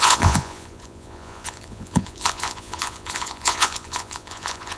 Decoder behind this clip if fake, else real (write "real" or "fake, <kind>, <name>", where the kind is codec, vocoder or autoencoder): fake, vocoder, Vocos